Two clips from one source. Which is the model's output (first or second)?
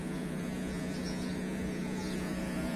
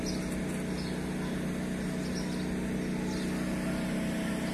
first